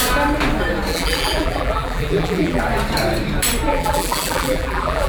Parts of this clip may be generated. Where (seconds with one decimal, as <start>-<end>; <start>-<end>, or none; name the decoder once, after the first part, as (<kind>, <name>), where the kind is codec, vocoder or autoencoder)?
0.9-2.6 (vocoder, BigVGAN v2); 3.7-5.1